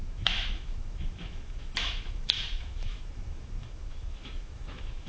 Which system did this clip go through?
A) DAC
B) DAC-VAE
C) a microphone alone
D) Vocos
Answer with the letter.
B